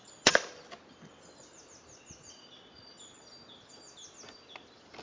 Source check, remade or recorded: recorded